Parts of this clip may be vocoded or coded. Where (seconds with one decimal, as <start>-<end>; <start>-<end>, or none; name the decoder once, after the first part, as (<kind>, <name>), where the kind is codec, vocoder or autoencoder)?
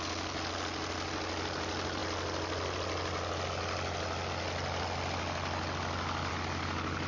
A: none